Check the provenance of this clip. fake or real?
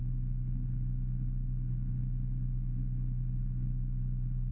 real